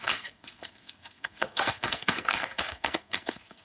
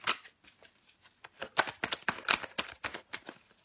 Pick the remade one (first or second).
first